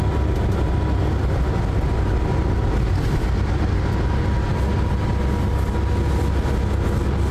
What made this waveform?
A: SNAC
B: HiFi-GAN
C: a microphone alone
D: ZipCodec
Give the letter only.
C